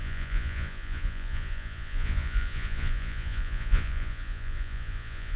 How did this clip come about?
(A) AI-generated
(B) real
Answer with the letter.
A